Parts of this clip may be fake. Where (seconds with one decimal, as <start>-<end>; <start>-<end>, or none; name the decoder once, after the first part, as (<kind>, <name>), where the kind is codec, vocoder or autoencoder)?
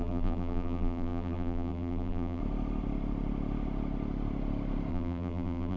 0.0-2.4 (vocoder, BigVGAN v2); 4.9-5.8